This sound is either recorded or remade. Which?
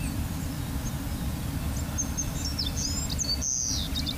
recorded